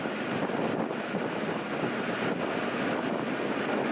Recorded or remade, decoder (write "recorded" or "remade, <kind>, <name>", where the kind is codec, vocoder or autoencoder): recorded